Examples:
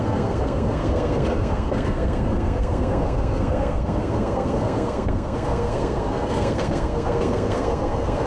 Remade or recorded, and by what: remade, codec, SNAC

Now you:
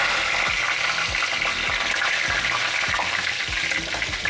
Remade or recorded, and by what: recorded